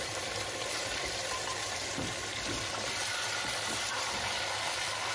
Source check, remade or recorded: remade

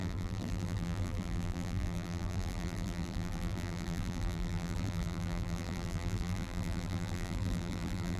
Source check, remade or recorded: remade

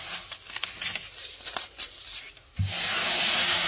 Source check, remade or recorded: recorded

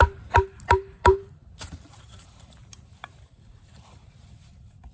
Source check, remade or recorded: remade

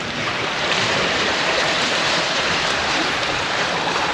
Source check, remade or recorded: remade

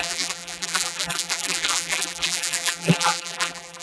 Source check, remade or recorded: remade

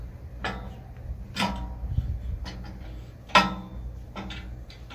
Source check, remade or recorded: recorded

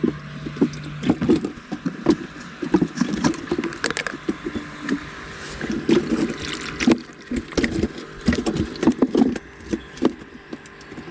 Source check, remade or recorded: recorded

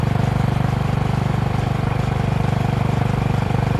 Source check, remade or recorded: remade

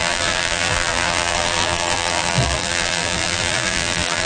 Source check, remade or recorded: remade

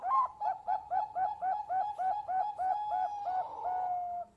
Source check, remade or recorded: recorded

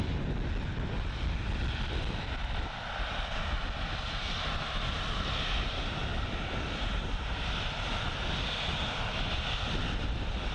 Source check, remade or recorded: recorded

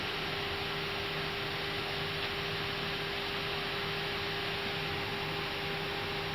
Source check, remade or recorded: recorded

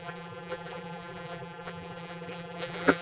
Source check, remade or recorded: remade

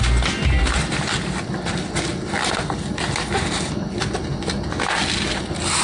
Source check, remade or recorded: recorded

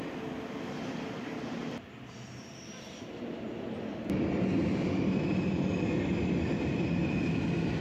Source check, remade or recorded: recorded